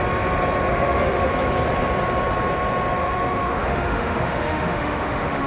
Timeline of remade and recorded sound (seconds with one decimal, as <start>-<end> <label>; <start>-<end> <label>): 0.0-0.7 recorded; 0.7-1.3 remade; 1.3-3.0 recorded; 3.0-5.5 remade